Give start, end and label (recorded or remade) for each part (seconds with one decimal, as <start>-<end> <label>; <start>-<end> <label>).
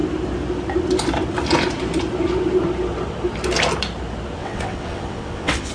0.0-4.4 recorded; 4.4-5.7 remade